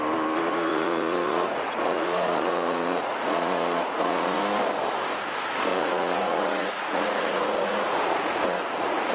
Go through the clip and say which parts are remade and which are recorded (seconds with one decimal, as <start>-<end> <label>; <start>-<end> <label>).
0.0-0.7 recorded; 0.7-4.4 remade; 4.4-5.7 recorded; 5.7-9.1 remade